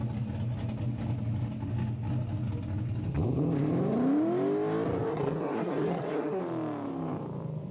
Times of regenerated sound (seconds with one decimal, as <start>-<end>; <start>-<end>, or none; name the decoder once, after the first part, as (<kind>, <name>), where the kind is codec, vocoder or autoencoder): 5.1-6.4 (codec, SNAC)